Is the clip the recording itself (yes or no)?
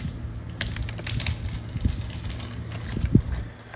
yes